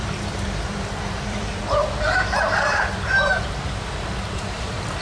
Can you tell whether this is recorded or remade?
remade